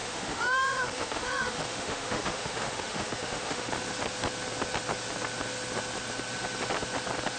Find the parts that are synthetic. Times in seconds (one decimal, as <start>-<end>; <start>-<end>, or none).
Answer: 0.0-3.7